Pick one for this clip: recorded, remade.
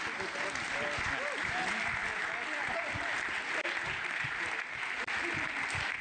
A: recorded